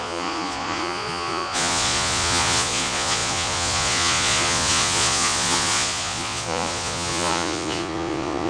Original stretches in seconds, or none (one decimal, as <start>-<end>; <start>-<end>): none